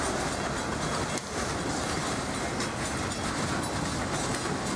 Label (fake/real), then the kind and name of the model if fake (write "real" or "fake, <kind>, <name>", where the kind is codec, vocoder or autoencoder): real